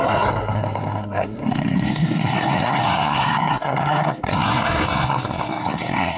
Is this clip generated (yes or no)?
yes